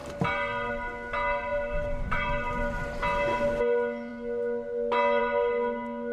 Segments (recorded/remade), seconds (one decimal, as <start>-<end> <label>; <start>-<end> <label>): 0.0-1.5 recorded; 1.5-3.0 remade; 3.0-6.1 recorded